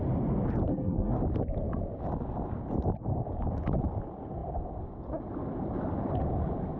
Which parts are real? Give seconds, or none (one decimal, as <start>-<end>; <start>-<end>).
0.0-0.7; 1.2-6.8